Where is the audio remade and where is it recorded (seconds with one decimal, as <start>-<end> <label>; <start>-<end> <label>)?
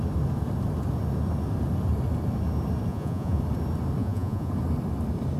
0.0-2.9 recorded; 2.9-3.4 remade; 3.4-4.0 recorded; 4.0-4.5 remade; 4.5-5.4 recorded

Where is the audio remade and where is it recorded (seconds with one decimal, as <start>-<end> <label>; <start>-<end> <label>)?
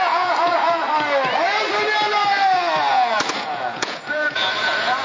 0.0-0.8 remade; 0.8-2.9 recorded; 2.9-5.0 remade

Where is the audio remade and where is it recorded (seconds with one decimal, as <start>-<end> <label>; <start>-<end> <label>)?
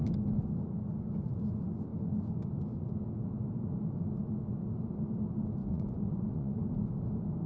0.0-5.6 recorded; 5.6-6.6 remade; 6.6-7.5 recorded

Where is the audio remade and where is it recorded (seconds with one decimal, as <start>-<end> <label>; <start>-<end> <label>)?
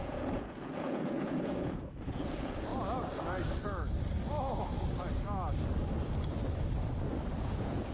0.0-2.7 remade; 2.7-7.4 recorded; 7.4-7.9 remade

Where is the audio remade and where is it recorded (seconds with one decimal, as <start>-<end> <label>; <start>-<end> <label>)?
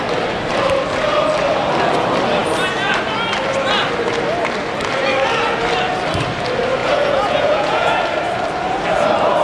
0.0-6.8 recorded; 6.8-8.0 remade; 8.0-9.4 recorded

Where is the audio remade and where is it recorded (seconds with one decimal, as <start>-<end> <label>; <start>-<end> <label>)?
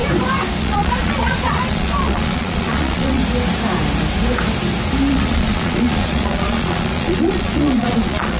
0.0-0.6 recorded; 0.6-3.2 remade; 3.2-5.1 recorded; 5.1-8.4 remade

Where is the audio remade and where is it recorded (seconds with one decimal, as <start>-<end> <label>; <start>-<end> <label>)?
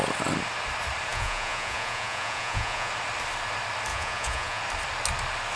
0.0-1.1 recorded; 1.1-2.9 remade; 2.9-3.9 recorded; 3.9-4.6 remade; 4.6-5.6 recorded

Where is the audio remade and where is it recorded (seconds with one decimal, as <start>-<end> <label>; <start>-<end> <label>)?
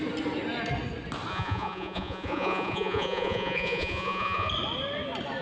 0.0-1.3 recorded; 1.3-4.5 remade; 4.5-5.4 recorded